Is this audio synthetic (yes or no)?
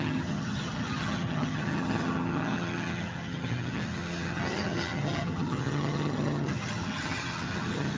yes